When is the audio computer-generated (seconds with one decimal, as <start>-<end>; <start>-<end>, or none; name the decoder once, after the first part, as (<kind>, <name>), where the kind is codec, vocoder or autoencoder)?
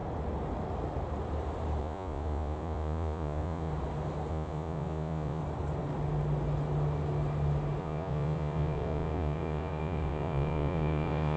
1.8-3.7 (vocoder, Vocos); 4.3-5.4; 7.8-11.4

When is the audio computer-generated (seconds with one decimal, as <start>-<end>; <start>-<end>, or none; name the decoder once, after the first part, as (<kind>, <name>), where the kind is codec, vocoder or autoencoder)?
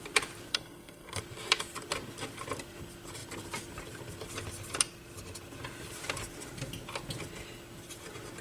0.5-1.2 (codec, SNAC)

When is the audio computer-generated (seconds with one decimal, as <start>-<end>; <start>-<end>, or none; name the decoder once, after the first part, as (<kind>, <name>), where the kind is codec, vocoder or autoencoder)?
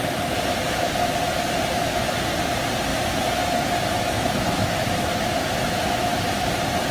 2.9-6.5 (autoencoder, DAC-VAE)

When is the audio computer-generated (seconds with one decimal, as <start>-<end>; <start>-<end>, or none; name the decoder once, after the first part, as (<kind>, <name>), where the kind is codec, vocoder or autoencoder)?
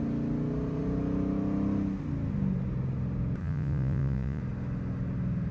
3.4-4.4 (vocoder, Vocos)